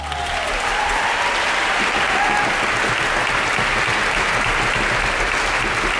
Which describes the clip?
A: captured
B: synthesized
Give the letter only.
A